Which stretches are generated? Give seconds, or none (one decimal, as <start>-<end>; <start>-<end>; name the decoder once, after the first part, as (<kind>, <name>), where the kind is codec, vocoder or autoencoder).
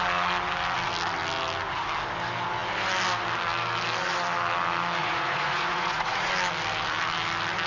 5.0-6.3 (vocoder, Vocos)